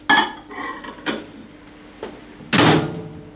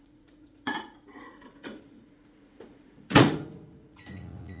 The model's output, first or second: second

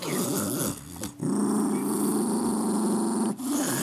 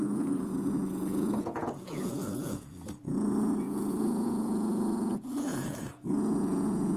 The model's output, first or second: second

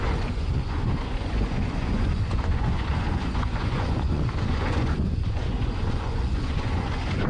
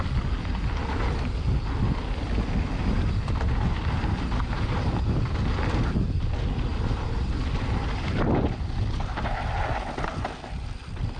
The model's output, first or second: first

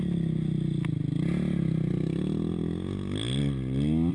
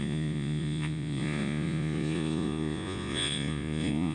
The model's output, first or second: second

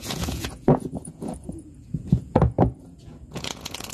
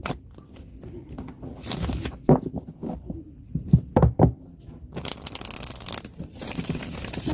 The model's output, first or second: first